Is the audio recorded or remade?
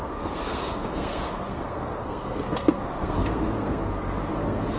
remade